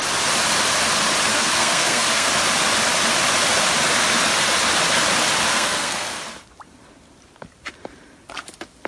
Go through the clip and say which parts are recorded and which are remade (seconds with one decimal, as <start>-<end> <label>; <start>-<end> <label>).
0.0-1.3 recorded; 1.3-2.3 remade; 2.3-5.5 recorded; 5.5-6.2 remade; 6.2-8.9 recorded